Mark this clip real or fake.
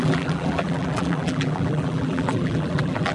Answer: fake